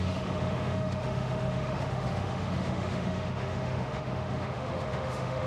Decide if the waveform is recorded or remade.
remade